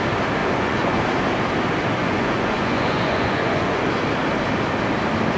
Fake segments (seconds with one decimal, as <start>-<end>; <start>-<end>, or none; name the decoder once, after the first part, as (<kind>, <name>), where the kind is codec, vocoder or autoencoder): 0.4-1.0 (vocoder, Vocos); 2.0-3.8